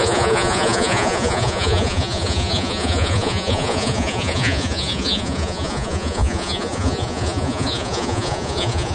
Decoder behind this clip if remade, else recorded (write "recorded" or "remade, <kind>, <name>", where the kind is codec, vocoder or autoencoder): remade, vocoder, Vocos